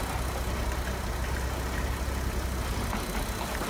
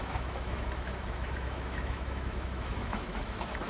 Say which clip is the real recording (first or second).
first